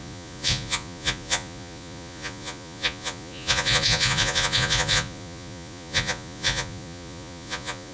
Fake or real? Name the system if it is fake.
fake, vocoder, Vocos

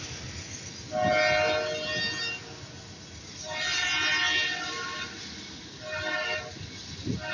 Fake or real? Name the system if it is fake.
real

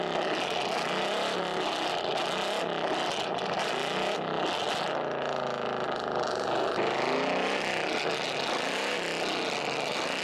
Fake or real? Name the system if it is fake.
real